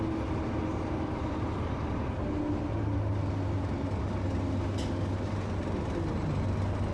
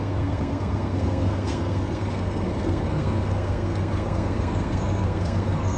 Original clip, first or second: first